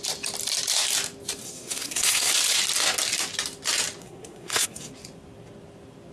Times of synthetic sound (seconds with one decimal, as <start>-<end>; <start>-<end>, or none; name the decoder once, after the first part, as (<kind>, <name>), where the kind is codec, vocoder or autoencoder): 1.4-2.3 (codec, SNAC); 4.0-4.9